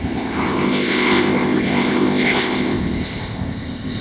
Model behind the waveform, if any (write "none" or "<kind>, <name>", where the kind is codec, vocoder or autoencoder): codec, ZipCodec